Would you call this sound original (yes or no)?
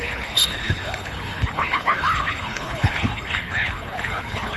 no